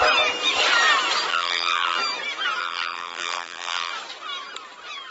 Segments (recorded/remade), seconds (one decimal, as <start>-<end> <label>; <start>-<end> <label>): 0.0-1.3 recorded; 1.3-2.0 remade; 2.0-2.6 recorded; 2.6-3.9 remade; 3.9-5.1 recorded